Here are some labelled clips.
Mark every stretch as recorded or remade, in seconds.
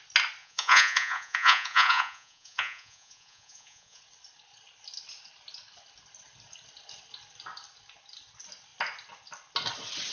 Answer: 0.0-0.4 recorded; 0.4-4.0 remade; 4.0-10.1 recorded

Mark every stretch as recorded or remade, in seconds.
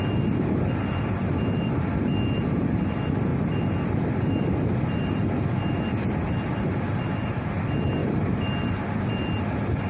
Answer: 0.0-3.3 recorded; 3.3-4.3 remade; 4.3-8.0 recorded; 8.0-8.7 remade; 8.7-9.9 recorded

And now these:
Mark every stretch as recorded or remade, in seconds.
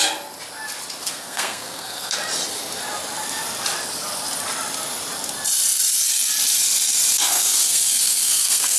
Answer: 0.0-1.0 recorded; 1.0-2.2 remade; 2.2-7.1 recorded; 7.1-8.8 remade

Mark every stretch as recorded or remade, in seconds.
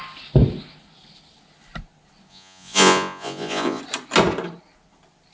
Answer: 0.0-2.3 recorded; 2.3-3.8 remade; 3.8-5.3 recorded